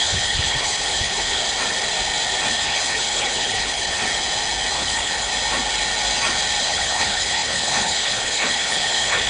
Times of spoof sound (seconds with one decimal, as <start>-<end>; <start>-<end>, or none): 0.0-1.4; 2.5-4.0; 4.7-5.3; 6.6-9.3